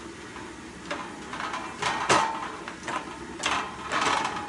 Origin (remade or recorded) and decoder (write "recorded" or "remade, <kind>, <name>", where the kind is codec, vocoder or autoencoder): recorded